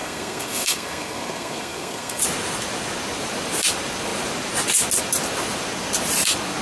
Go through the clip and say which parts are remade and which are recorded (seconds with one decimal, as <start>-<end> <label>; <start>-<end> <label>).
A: 0.0-2.2 remade; 2.2-6.6 recorded